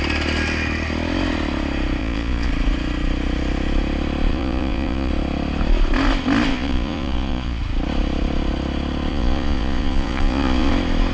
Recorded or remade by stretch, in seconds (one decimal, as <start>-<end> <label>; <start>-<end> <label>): 0.0-2.0 recorded; 2.0-2.5 remade; 2.5-4.3 recorded; 4.3-5.1 remade; 5.1-6.5 recorded; 6.5-7.6 remade; 7.6-9.1 recorded; 9.1-10.7 remade; 10.7-11.1 recorded